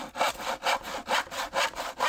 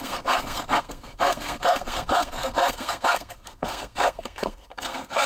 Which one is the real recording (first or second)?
first